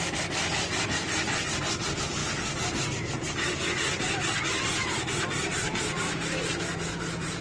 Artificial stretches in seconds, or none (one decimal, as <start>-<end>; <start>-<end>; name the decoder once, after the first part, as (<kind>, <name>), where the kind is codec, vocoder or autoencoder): none